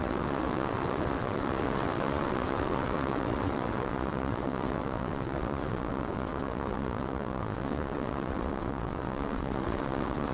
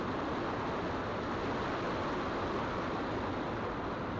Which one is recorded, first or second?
second